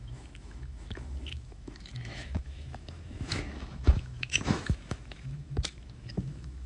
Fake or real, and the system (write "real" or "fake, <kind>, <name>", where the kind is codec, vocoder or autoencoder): fake, autoencoder, DAC-VAE